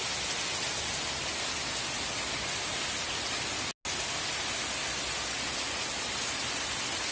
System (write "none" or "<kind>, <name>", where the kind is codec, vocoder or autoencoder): none